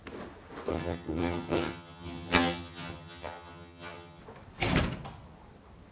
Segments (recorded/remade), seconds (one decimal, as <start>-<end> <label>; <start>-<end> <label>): 0.0-0.7 recorded; 0.7-4.2 remade; 4.2-5.9 recorded